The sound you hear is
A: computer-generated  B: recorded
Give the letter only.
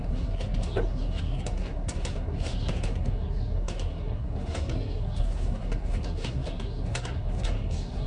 A